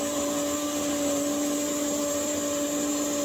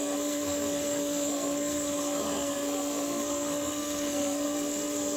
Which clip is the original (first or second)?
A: first